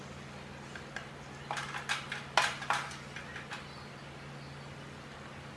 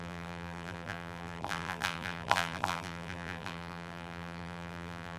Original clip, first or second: first